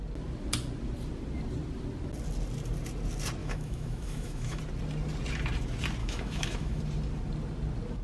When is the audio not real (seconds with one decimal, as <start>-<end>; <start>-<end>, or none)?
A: 3.4-4.6; 6.0-6.8